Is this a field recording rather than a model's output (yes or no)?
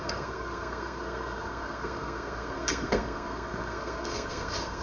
no